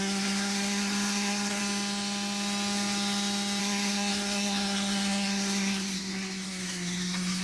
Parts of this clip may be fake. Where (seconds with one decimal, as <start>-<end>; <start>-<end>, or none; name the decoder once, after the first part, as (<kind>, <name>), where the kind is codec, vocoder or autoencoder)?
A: 0.0-1.6 (codec, SNAC); 3.6-7.4